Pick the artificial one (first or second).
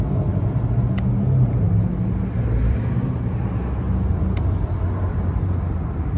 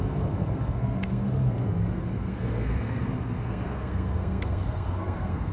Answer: second